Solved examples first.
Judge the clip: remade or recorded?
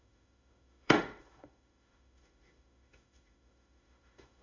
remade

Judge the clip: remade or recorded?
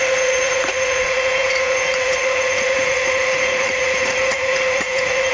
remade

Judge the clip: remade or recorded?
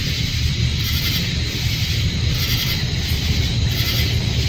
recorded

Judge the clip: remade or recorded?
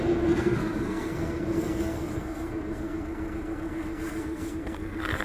remade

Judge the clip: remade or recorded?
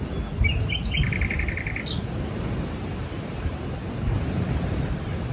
recorded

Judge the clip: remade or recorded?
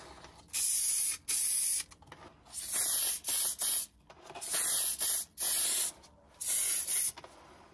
recorded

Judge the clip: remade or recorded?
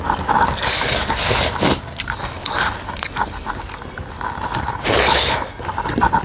recorded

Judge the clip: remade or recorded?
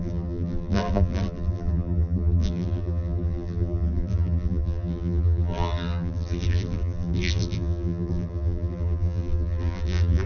remade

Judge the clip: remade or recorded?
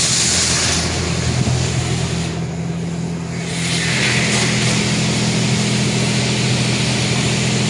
recorded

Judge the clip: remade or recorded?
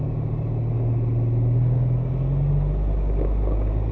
recorded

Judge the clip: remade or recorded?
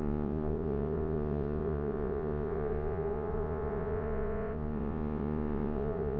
remade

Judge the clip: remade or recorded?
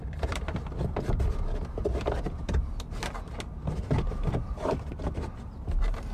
remade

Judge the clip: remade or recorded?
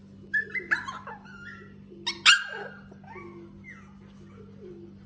recorded